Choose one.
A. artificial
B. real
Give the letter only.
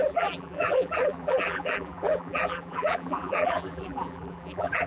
A